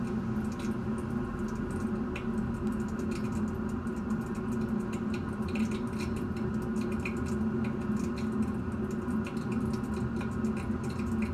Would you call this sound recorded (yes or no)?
yes